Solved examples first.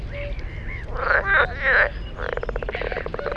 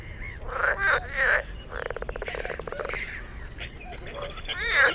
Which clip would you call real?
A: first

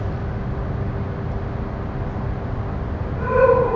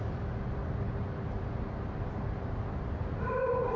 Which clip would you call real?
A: first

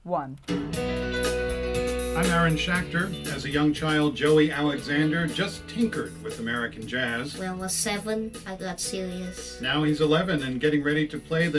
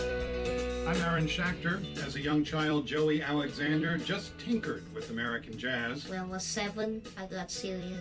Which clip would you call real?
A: first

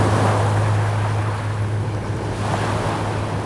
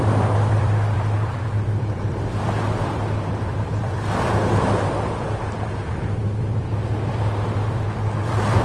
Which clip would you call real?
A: first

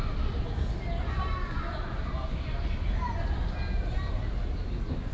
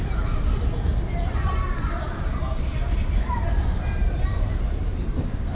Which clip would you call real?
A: first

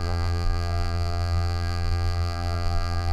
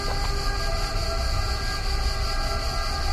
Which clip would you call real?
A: second